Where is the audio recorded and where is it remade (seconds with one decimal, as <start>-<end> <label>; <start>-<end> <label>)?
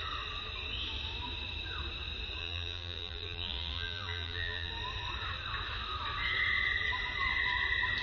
0.0-2.4 recorded; 2.4-4.7 remade; 4.7-8.0 recorded